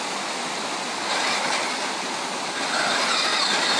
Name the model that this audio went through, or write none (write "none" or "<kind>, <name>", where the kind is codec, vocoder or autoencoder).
none